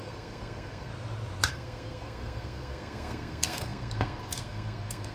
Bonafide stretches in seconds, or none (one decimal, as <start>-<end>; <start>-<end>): 0.9-1.5